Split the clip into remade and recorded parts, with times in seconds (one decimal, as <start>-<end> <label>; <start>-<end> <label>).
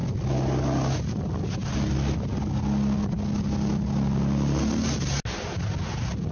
0.0-6.3 recorded